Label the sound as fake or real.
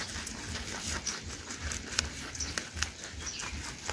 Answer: real